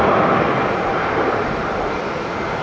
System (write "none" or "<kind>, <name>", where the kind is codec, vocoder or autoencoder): none